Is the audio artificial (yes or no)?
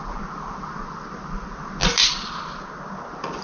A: no